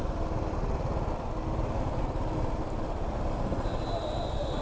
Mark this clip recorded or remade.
recorded